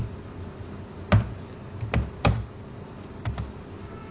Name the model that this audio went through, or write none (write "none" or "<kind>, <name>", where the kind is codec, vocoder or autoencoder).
none